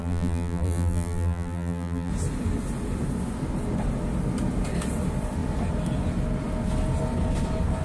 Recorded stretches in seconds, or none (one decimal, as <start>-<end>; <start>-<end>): 2.1-7.8